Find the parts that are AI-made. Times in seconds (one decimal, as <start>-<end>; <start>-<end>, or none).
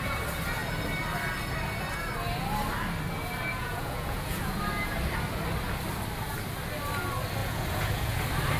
3.5-4.6; 7.4-8.2